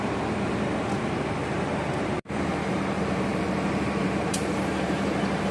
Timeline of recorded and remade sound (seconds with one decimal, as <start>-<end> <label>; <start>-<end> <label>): 0.0-5.5 remade

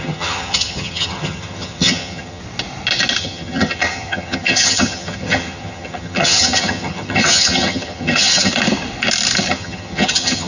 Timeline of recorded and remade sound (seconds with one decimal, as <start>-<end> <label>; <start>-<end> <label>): 0.0-2.4 remade; 2.4-3.2 recorded; 3.2-8.5 remade; 8.5-9.5 recorded; 9.5-10.5 remade

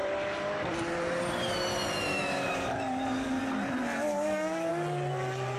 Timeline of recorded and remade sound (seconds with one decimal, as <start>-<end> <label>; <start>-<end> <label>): 0.0-2.1 recorded; 2.1-3.4 remade; 3.4-4.1 recorded; 4.1-4.7 remade; 4.7-5.6 recorded

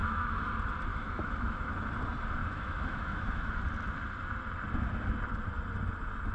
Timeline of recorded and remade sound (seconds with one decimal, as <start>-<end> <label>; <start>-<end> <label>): 0.0-0.5 remade; 0.5-0.9 recorded; 0.9-1.7 remade; 1.7-2.4 recorded; 2.4-3.5 remade; 3.5-6.3 recorded